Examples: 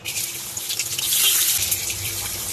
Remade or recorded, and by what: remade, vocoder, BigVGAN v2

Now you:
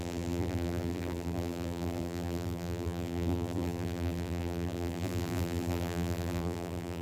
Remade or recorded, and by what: remade, vocoder, BigVGAN v2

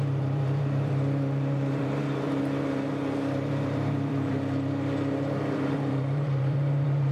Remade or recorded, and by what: remade, vocoder, BigVGAN v2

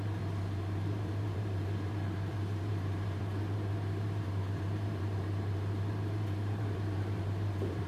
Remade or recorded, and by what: remade, vocoder, BigVGAN v2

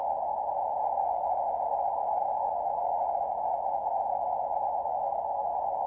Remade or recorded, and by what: recorded